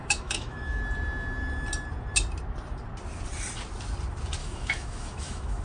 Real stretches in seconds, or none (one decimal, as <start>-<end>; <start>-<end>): 0.8-4.4